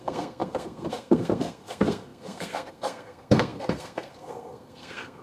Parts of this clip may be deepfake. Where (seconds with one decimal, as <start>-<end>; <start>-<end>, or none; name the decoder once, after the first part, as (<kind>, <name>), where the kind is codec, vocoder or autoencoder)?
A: 0.0-5.2 (codec, SNAC)